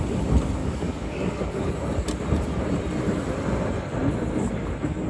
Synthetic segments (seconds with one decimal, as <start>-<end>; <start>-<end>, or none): 0.6-1.7